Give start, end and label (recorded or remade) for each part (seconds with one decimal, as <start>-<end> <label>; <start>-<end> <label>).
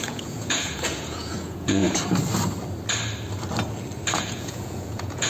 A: 0.0-1.8 remade; 1.8-4.1 recorded; 4.1-5.3 remade